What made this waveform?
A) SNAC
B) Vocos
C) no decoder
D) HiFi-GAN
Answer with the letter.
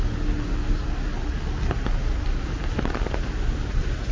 C